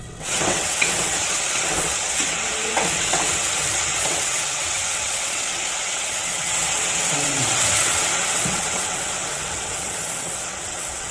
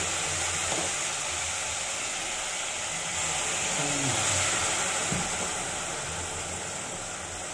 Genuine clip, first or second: second